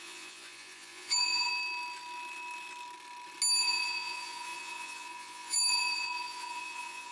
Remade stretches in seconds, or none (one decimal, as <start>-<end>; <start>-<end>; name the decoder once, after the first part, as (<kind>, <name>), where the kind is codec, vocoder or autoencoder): 0.0-1.5 (vocoder, Vocos); 3.6-7.1